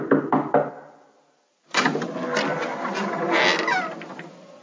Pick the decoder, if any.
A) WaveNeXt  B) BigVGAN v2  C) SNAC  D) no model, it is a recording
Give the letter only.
D